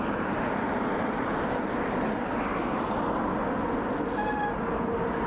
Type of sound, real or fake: real